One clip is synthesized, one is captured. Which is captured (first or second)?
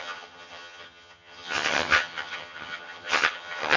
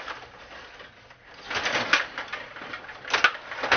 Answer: second